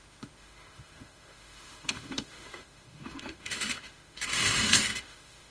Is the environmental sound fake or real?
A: fake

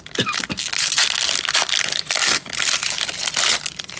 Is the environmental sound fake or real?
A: real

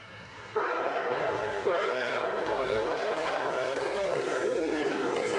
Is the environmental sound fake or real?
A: fake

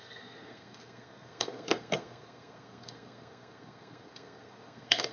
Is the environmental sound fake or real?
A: fake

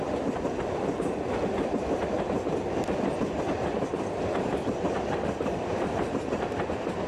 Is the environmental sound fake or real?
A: fake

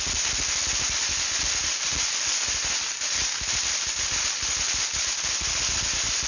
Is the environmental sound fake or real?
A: real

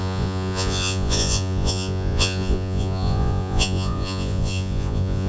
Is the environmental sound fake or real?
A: fake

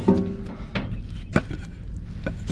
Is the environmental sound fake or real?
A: real